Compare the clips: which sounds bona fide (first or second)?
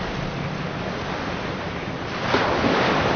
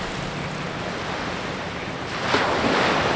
second